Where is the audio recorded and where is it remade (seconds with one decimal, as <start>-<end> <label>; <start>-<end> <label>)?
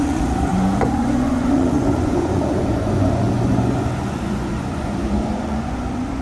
0.0-6.2 remade